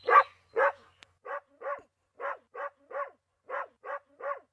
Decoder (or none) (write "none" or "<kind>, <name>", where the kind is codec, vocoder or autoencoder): vocoder, Vocos